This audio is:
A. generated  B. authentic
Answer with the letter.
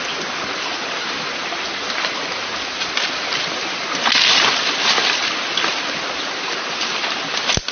B